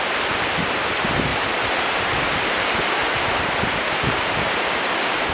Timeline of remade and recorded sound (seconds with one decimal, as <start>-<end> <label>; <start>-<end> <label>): 0.0-1.3 recorded; 1.3-2.1 remade; 2.1-3.0 recorded; 3.0-5.3 remade